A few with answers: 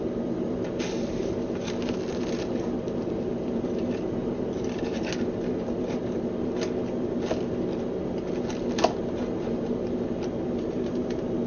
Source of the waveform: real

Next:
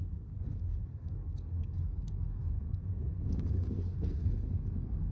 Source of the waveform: fake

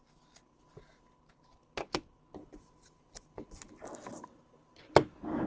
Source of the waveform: real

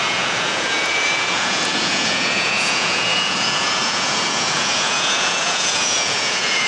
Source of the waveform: fake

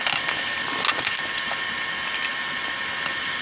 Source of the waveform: real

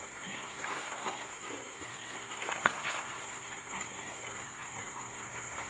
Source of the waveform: fake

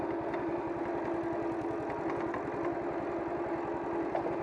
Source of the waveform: real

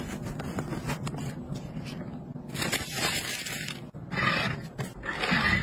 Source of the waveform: real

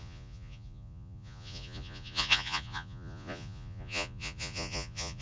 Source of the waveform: fake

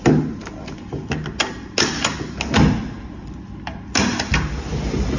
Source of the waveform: real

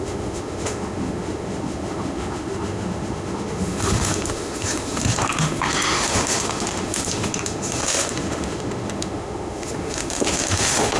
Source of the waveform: fake